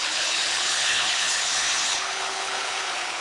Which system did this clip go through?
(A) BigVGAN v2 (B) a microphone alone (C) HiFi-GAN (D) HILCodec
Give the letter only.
D